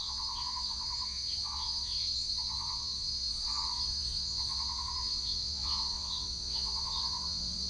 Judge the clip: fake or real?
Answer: fake